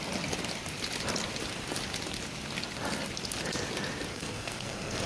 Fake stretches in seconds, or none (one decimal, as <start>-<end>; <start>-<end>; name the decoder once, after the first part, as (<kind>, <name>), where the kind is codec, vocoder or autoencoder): 4.1-5.1 (codec, SNAC)